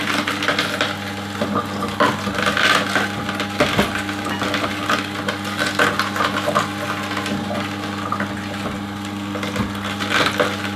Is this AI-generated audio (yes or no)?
no